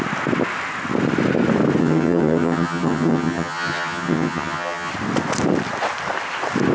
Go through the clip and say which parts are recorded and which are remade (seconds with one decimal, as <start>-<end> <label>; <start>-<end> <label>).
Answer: 0.0-1.8 recorded; 1.8-4.9 remade; 4.9-6.7 recorded